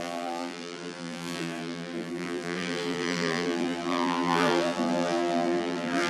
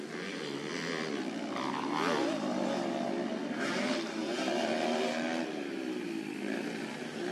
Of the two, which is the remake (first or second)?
first